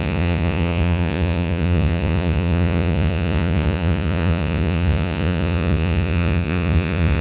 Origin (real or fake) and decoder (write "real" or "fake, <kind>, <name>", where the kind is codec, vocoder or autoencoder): fake, vocoder, Vocos